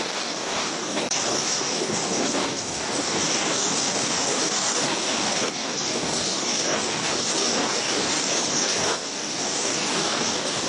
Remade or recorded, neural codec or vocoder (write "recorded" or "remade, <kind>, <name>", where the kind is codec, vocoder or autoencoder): remade, codec, DAC